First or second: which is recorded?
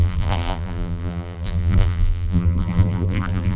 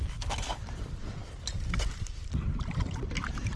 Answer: second